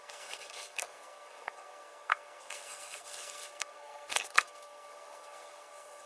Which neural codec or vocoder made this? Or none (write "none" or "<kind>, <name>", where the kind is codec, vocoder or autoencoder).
codec, SNAC